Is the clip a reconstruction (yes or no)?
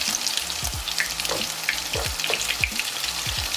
yes